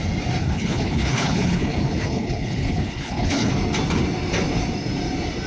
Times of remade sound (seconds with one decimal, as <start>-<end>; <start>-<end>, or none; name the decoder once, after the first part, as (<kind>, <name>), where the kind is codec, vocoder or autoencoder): 0.4-3.5 (codec, HILCodec)